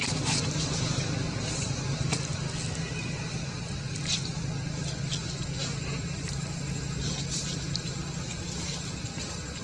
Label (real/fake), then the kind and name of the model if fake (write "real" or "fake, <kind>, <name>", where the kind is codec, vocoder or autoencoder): real